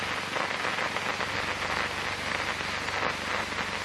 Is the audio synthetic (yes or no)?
no